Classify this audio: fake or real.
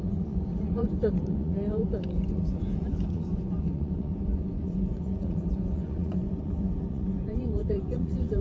fake